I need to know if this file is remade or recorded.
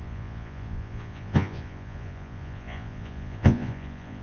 remade